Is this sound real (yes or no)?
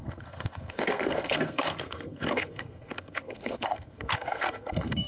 no